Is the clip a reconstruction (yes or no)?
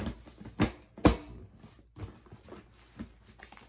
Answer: no